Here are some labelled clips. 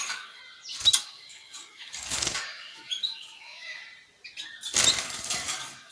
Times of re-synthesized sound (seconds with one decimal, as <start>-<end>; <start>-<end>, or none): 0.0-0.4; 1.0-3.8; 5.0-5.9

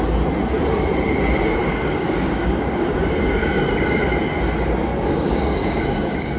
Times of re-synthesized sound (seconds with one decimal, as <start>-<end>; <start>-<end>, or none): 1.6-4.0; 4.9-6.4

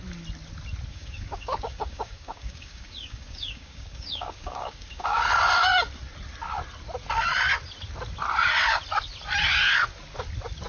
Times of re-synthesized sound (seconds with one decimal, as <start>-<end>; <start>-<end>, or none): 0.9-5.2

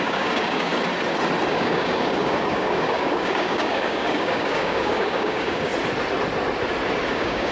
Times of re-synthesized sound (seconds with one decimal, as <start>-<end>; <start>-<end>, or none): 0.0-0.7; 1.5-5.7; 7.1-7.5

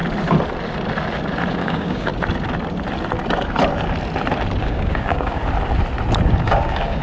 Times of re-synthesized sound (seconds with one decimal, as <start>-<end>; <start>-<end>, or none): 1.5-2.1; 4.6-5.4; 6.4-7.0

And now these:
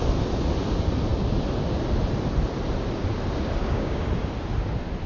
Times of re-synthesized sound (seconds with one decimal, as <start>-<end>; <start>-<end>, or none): 3.6-4.1